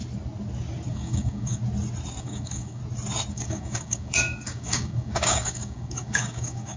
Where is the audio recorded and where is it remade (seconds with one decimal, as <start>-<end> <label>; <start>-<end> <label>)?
0.0-0.9 recorded; 0.9-1.6 remade; 1.6-2.2 recorded; 2.2-2.8 remade; 2.8-3.3 recorded; 3.3-6.8 remade